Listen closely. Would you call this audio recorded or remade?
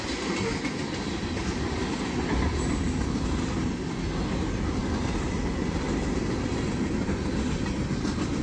recorded